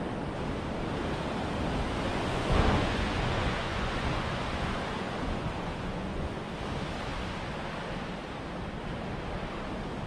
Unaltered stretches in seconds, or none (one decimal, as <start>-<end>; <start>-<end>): 0.0-2.1; 6.5-10.1